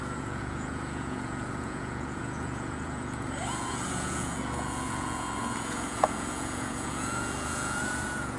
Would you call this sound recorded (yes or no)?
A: no